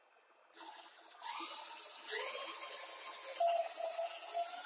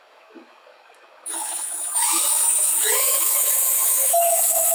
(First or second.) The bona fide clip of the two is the first